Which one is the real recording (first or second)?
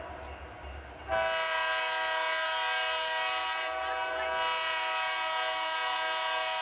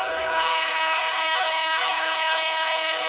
first